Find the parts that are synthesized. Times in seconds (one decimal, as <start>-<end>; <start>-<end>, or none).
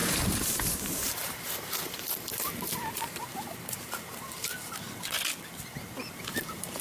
0.0-4.5; 6.2-6.8